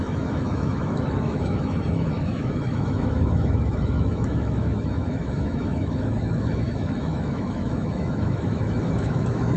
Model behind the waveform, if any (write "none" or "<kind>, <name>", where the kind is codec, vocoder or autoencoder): autoencoder, DAC-VAE